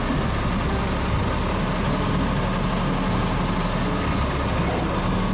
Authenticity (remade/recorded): recorded